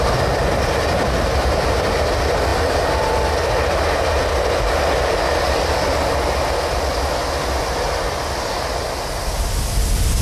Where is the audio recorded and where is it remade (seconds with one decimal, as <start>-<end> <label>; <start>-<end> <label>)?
0.0-10.2 recorded